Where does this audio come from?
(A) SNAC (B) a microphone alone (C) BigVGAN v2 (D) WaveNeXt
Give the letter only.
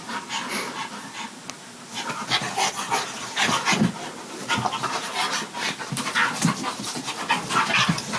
B